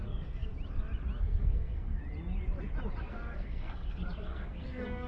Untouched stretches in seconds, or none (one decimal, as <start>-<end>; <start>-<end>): 0.5-1.2; 2.0-3.0